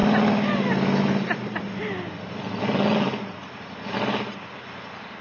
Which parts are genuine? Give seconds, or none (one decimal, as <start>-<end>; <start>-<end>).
2.6-5.2